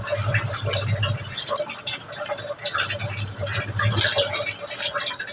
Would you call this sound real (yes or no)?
yes